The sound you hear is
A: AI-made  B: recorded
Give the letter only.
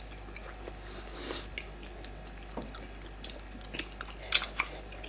B